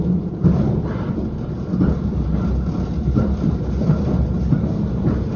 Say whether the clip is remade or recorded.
recorded